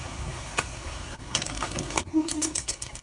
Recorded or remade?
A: remade